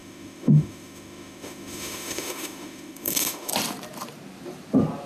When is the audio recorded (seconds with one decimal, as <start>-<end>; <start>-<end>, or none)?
3.5-5.1